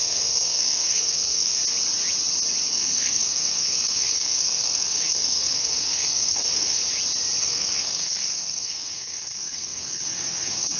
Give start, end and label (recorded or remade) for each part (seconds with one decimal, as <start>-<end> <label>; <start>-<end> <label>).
0.0-1.6 remade; 1.6-2.7 recorded; 2.7-6.8 remade; 6.8-7.4 recorded; 7.4-10.8 remade